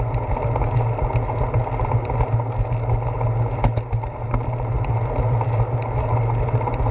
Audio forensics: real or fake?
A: real